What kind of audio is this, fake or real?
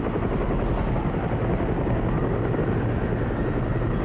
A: real